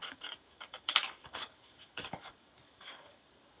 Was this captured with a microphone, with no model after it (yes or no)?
no